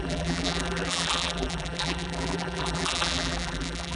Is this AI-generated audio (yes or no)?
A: yes